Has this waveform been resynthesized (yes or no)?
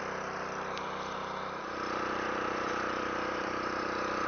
yes